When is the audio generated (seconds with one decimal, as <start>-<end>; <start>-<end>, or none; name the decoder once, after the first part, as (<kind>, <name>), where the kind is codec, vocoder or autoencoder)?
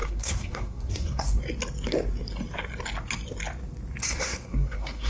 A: 0.0-1.4 (codec, SNAC); 4.0-5.1